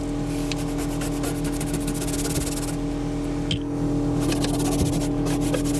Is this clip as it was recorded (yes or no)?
yes